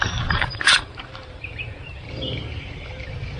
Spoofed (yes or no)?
yes